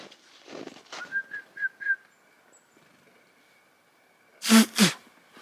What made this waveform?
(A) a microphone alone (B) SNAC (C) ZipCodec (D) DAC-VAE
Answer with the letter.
A